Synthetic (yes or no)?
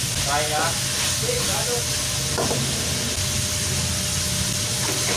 no